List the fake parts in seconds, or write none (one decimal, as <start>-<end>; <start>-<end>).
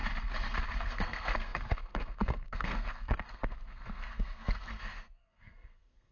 0.8-6.1